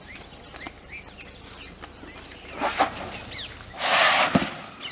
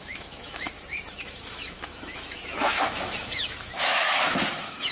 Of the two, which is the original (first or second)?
first